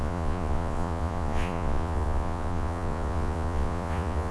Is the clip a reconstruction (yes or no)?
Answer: yes